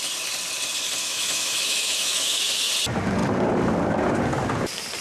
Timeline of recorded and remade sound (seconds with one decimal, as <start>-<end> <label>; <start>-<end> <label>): 0.0-1.0 recorded; 1.0-2.7 remade; 2.7-5.0 recorded